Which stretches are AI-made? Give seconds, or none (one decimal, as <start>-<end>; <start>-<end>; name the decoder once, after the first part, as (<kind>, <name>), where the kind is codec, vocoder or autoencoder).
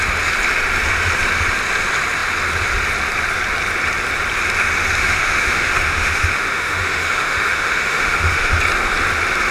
5.0-8.6 (autoencoder, DAC-VAE)